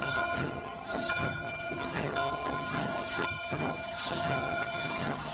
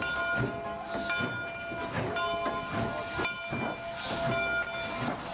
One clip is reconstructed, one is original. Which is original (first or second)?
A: second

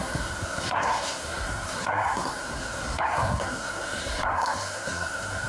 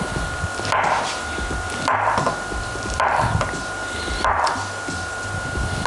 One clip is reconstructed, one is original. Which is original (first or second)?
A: second